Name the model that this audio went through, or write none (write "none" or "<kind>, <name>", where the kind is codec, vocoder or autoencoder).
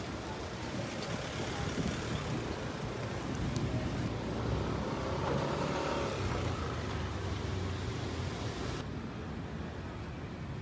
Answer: none